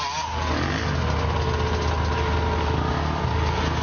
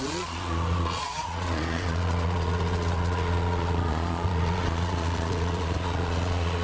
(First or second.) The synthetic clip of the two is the second